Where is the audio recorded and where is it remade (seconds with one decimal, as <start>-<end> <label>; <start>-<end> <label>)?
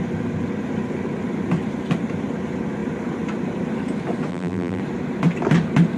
0.0-4.3 recorded; 4.3-4.8 remade; 4.8-6.0 recorded